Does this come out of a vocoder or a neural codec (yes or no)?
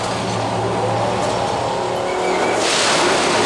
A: no